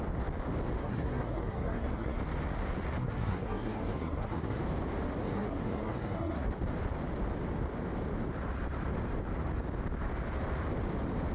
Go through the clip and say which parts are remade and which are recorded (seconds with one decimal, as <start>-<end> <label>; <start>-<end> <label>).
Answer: 0.0-0.8 recorded; 0.8-2.2 remade; 2.2-3.0 recorded; 3.0-4.6 remade; 4.6-5.2 recorded; 5.2-6.5 remade; 6.5-11.3 recorded